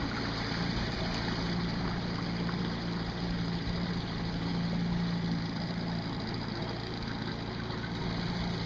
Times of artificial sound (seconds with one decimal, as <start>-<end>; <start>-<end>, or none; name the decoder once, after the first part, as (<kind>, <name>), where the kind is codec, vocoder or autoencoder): none